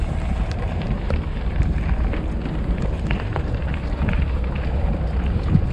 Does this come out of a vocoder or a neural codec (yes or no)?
yes